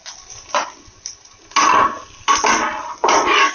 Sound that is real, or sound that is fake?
real